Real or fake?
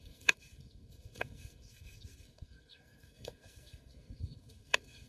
fake